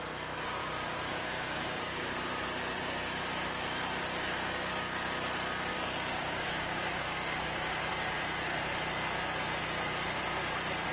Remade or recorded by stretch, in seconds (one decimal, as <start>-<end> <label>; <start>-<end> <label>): 0.0-0.6 recorded; 0.6-2.0 remade; 2.0-5.7 recorded; 5.7-7.9 remade; 7.9-10.9 recorded